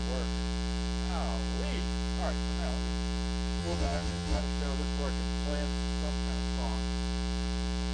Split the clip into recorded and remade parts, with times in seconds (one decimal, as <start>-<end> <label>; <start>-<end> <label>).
0.0-3.6 recorded; 3.6-4.4 remade; 4.4-7.9 recorded